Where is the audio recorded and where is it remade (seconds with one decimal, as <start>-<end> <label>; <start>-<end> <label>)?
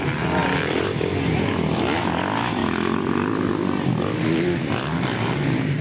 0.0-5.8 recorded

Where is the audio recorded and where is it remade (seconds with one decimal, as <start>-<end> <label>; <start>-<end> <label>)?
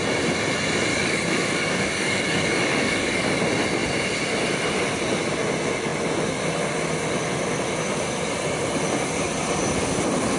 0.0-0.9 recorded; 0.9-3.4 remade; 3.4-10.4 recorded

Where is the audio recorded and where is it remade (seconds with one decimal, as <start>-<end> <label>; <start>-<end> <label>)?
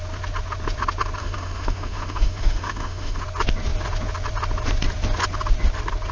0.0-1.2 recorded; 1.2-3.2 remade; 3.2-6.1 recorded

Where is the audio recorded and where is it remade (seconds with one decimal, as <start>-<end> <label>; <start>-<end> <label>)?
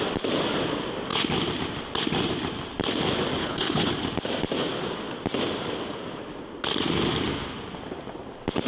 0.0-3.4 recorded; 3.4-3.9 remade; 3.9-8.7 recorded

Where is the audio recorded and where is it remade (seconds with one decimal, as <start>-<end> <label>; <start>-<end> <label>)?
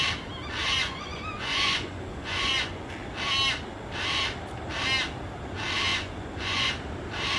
0.0-0.6 recorded; 0.6-2.9 remade; 2.9-5.9 recorded; 5.9-6.7 remade; 6.7-7.4 recorded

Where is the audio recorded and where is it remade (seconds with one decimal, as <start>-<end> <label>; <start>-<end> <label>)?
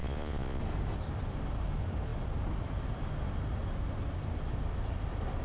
0.0-0.6 remade; 0.6-5.4 recorded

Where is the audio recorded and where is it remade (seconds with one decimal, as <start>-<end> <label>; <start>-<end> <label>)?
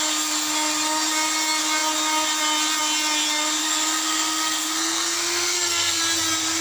0.0-3.6 recorded; 3.6-6.0 remade; 6.0-6.6 recorded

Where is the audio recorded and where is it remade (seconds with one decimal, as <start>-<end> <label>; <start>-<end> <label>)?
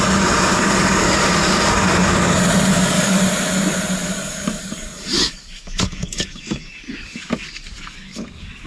0.0-0.5 recorded; 0.5-2.3 remade; 2.3-2.7 recorded; 2.7-3.2 remade; 3.2-4.0 recorded; 4.0-8.7 remade